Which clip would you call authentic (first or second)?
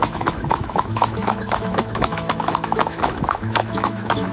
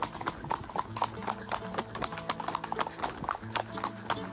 second